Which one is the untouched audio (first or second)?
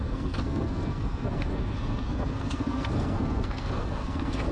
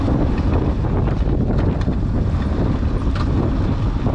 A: second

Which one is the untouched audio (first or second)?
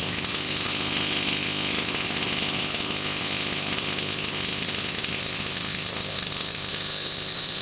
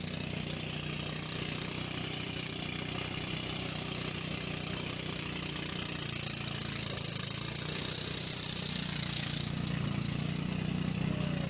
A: second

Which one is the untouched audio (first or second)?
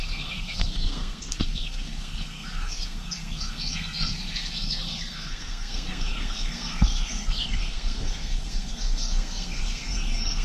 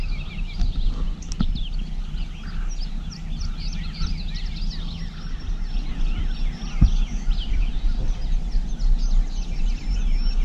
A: second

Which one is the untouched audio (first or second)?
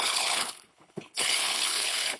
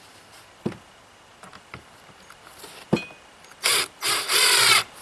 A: second